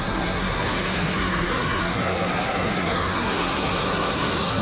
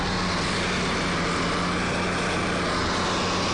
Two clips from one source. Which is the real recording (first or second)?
second